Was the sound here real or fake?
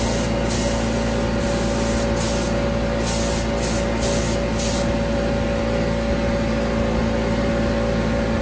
real